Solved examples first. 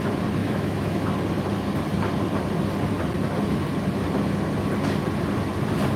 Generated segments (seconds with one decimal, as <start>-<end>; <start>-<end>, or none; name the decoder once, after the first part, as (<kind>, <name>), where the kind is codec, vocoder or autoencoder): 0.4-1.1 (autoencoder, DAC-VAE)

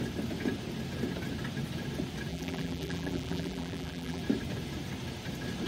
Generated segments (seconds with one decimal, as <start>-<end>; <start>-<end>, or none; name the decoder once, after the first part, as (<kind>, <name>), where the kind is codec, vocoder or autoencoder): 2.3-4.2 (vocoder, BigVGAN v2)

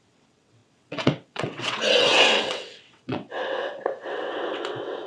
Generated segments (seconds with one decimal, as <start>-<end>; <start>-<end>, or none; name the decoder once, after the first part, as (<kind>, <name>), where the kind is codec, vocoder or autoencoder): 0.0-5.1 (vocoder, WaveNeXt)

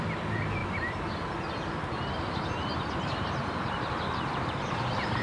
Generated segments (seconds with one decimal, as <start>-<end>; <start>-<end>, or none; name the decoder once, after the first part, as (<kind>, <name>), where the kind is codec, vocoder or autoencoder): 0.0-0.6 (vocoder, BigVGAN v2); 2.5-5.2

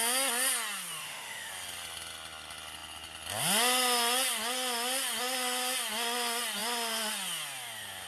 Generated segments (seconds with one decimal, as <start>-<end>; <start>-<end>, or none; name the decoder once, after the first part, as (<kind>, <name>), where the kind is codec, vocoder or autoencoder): 1.0-1.5 (autoencoder, DAC-VAE)